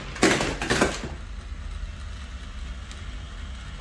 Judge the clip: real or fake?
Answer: real